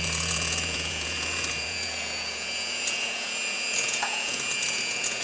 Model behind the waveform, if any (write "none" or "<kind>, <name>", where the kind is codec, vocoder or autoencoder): vocoder, Vocos